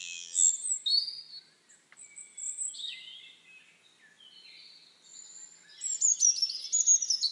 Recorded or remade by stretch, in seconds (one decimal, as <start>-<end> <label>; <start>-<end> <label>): 0.0-0.5 remade; 0.5-7.3 recorded